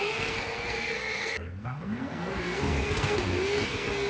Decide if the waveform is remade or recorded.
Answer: remade